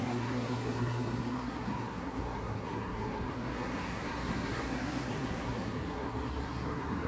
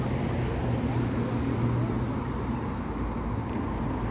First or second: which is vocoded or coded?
first